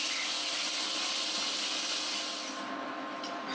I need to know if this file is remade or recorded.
recorded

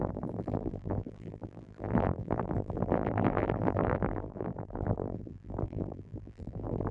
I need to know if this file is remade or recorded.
remade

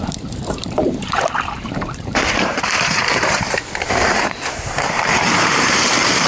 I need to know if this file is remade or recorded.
remade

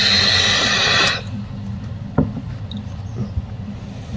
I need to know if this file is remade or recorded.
recorded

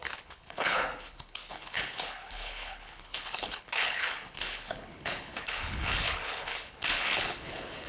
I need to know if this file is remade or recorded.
remade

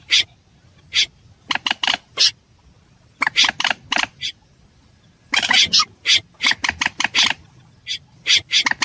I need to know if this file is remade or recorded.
recorded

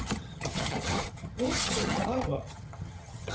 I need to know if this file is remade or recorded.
remade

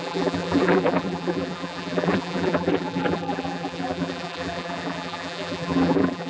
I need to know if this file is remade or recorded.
remade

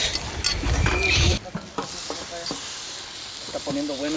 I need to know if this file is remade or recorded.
recorded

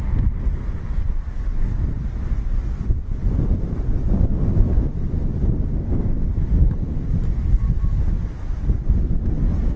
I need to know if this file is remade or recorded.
recorded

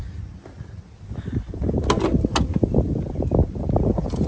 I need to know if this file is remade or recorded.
recorded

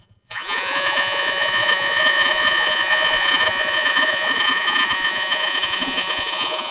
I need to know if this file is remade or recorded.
remade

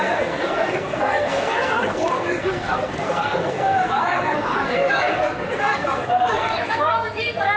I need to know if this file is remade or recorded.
remade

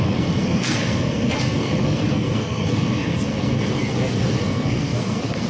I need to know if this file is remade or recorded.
remade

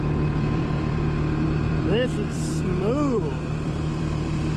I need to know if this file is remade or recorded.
remade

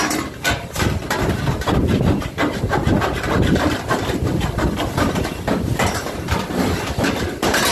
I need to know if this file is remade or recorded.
remade